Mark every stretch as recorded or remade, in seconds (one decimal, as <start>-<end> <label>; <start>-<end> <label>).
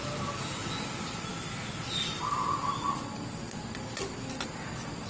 0.0-0.7 remade; 0.7-5.1 recorded